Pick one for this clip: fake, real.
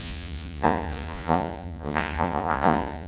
fake